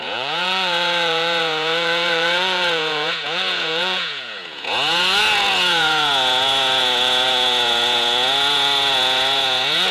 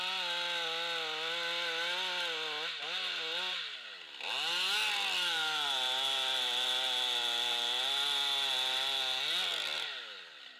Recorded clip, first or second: second